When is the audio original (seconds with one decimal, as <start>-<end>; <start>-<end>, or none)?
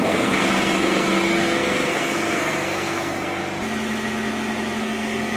3.4-4.8